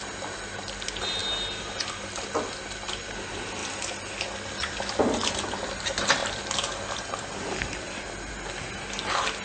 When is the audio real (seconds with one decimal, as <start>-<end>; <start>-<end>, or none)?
0.0-6.2; 8.3-9.4